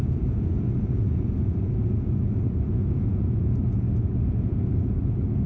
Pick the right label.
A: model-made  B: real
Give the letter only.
A